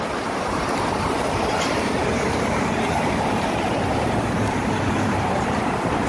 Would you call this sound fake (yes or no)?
yes